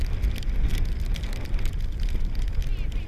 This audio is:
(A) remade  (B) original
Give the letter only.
B